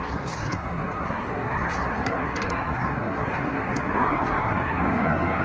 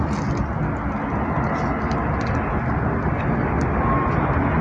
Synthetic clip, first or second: first